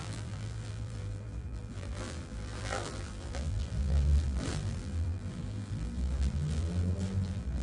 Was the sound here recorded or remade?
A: remade